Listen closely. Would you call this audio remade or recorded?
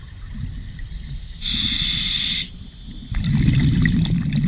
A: recorded